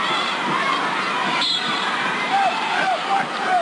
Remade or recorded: remade